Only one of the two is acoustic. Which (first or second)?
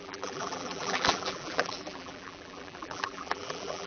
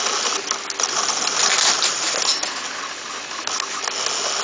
second